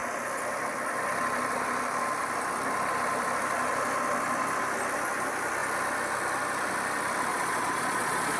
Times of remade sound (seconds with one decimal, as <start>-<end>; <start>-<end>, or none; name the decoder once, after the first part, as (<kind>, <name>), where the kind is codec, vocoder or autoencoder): 7.3-8.4 (vocoder, Vocos)